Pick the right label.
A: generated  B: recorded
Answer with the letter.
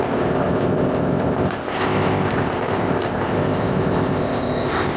A